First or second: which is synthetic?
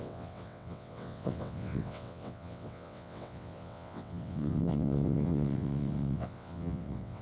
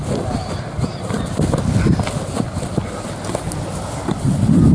first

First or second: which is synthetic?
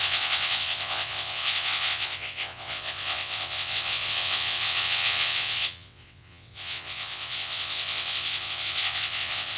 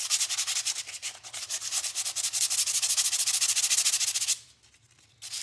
first